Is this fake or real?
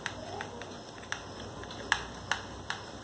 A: real